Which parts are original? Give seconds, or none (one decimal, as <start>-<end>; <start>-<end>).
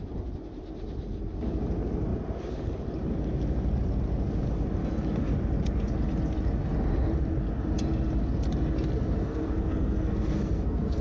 0.0-9.2